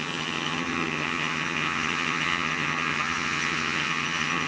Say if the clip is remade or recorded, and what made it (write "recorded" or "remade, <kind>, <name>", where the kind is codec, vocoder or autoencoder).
remade, vocoder, HiFi-GAN